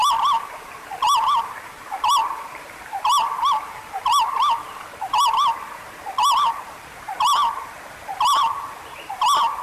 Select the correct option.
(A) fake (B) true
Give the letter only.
A